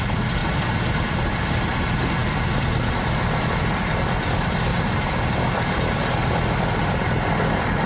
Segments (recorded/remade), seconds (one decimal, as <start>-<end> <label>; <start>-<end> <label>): 0.0-4.7 recorded; 4.7-5.8 remade; 5.8-7.9 recorded